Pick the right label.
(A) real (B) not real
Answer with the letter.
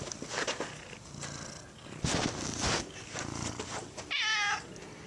A